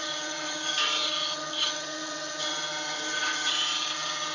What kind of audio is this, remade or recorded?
remade